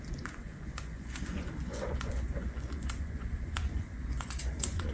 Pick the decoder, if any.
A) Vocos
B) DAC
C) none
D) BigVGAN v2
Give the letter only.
A